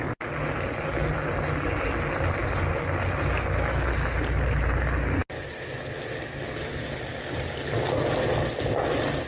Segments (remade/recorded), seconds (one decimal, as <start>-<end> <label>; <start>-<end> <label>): 0.0-9.3 recorded